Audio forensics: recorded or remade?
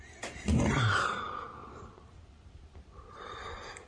recorded